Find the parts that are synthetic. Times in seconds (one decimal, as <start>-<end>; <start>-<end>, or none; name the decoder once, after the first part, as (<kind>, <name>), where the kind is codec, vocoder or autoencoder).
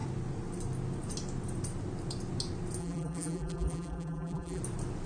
2.8-4.6 (vocoder, BigVGAN v2)